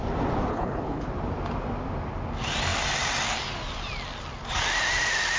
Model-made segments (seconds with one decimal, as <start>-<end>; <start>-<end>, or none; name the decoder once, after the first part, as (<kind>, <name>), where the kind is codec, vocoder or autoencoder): 0.5-1.0 (codec, HILCodec)